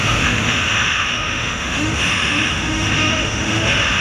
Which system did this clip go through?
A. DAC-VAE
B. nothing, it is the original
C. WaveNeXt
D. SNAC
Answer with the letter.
A